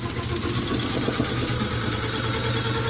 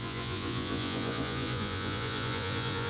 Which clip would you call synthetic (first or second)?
second